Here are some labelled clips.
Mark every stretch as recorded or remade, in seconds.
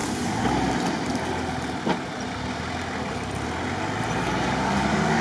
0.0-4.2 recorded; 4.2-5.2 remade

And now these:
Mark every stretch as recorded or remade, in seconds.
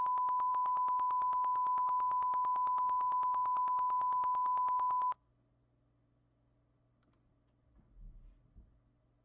0.0-0.5 recorded; 0.5-5.3 remade; 5.3-9.2 recorded